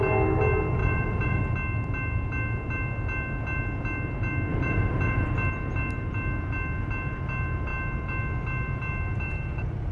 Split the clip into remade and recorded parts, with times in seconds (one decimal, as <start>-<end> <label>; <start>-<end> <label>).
0.0-0.8 recorded; 0.8-1.4 remade; 1.4-4.5 recorded; 4.5-5.3 remade; 5.3-9.9 recorded